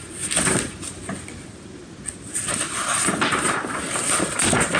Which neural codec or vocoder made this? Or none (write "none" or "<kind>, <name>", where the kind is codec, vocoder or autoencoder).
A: none